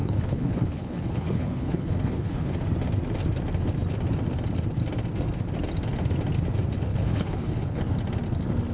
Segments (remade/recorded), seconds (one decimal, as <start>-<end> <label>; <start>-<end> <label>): 0.0-2.5 remade; 2.5-6.9 recorded; 6.9-7.8 remade; 7.8-8.7 recorded